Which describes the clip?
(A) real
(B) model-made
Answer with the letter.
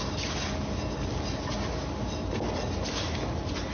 A